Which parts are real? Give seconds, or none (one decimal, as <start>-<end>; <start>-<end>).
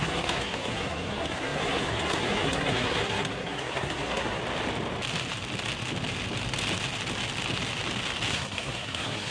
4.4-8.3